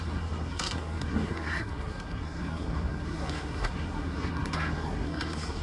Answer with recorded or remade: remade